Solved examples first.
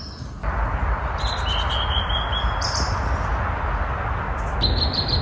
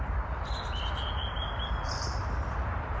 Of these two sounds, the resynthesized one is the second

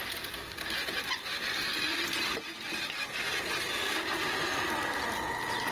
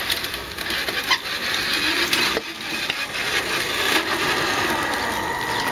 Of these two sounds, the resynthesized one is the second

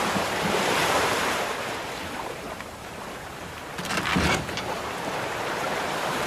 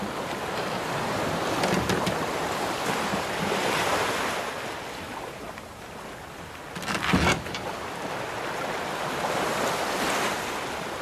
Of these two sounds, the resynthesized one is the first